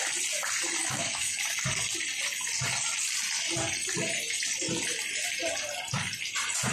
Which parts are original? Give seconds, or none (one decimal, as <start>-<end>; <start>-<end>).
0.0-0.8; 1.4-6.7